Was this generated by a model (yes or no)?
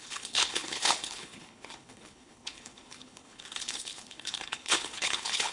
yes